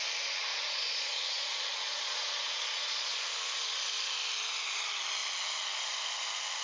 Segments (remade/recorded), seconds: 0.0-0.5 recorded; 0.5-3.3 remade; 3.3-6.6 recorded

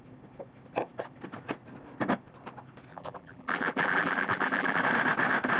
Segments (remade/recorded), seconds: 0.0-2.9 recorded; 2.9-4.8 remade; 4.8-5.6 recorded

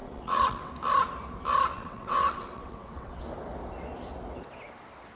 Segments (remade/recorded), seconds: 0.0-0.7 remade; 0.7-1.7 recorded; 1.7-3.2 remade; 3.2-5.2 recorded